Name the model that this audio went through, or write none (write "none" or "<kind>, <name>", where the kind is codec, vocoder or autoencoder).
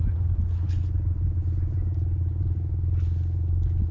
none